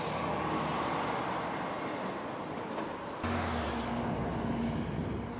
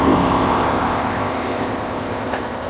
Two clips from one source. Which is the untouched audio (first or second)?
first